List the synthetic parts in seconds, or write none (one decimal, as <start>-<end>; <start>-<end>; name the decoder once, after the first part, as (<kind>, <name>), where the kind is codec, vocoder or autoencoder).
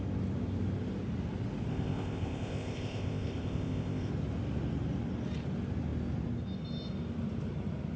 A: 1.7-4.1 (codec, ZipCodec)